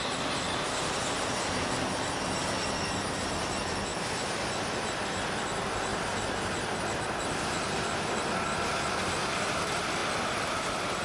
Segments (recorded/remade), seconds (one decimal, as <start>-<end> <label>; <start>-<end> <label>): 0.0-3.9 recorded; 3.9-4.4 remade; 4.4-11.0 recorded